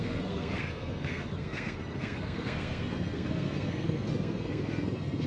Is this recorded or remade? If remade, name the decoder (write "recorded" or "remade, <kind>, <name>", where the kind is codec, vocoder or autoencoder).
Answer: remade, codec, SNAC